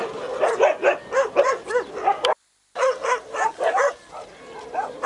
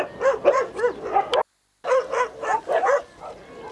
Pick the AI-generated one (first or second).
first